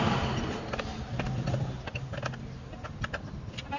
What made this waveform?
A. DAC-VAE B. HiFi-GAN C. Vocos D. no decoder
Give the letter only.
D